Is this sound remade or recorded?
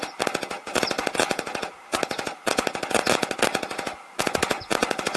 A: recorded